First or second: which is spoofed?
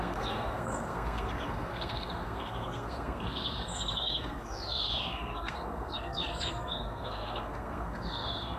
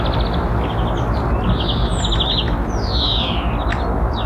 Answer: first